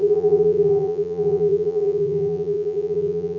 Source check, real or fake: fake